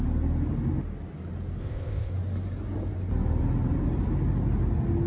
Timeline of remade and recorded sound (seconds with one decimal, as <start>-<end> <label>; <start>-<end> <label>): 0.0-1.6 recorded; 1.6-2.1 remade; 2.1-5.1 recorded